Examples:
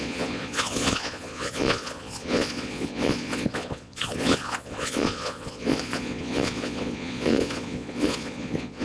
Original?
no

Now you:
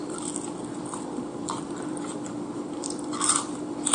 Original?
no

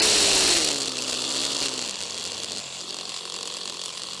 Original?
yes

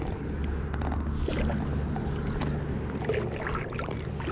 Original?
yes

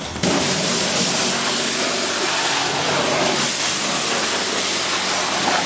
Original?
yes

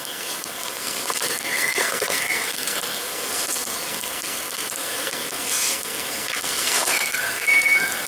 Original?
no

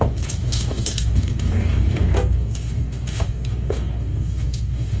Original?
no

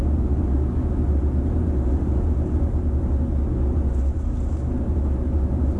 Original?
yes